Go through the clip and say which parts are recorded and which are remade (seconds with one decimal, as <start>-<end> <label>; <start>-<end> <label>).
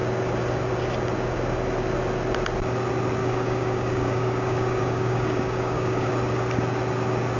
0.0-3.2 recorded; 3.2-6.1 remade; 6.1-7.4 recorded